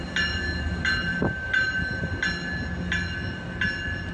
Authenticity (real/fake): real